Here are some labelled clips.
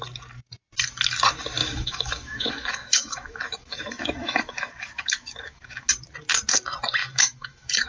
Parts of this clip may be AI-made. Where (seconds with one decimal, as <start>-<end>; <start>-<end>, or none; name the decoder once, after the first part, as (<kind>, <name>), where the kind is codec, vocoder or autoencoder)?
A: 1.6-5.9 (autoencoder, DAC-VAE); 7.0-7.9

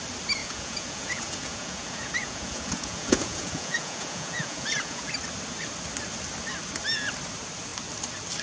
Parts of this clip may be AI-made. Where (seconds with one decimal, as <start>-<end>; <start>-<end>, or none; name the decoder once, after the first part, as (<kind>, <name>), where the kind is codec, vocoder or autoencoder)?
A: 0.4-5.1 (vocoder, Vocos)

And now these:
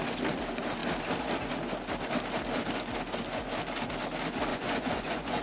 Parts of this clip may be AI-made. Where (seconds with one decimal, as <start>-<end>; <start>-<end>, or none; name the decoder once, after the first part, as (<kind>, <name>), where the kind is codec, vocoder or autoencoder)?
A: 4.5-5.4 (vocoder, Vocos)

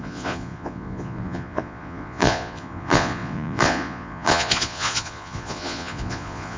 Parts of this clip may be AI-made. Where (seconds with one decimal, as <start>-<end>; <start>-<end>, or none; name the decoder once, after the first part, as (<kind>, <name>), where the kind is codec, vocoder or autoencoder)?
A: 0.0-6.6 (vocoder, Vocos)

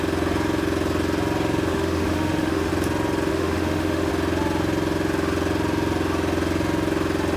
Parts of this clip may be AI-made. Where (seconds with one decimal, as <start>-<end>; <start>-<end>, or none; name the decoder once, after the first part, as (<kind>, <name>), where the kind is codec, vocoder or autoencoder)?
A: 1.7-2.7 (autoencoder, DAC-VAE); 3.3-4.1

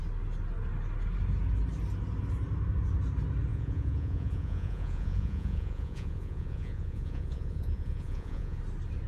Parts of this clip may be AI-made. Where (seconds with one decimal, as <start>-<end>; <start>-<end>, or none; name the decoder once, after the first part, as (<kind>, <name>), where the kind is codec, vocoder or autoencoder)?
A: 3.5-8.6 (vocoder, Vocos)

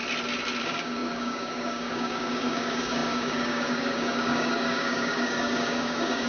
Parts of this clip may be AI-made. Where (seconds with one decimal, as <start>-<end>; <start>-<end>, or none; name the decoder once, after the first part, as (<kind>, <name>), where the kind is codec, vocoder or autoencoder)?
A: 0.6-6.3 (codec, DAC)